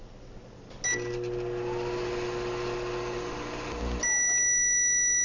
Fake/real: real